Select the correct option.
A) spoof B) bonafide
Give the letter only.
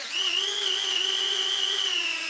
A